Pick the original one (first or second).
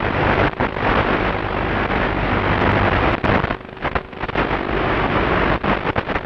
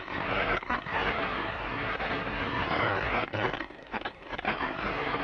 first